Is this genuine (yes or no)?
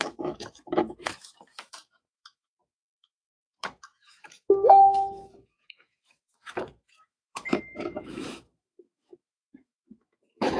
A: no